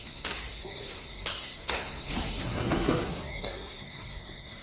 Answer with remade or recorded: remade